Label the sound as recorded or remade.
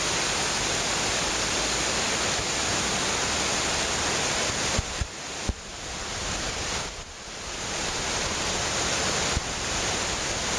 recorded